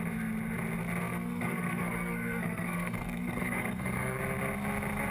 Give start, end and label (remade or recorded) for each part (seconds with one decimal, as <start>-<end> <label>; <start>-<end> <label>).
0.0-1.1 recorded; 1.1-4.2 remade; 4.2-5.1 recorded